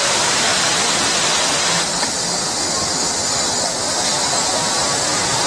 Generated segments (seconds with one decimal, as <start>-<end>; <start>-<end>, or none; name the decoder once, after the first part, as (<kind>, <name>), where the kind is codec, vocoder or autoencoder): 0.0-0.5 (vocoder, BigVGAN v2); 3.8-5.5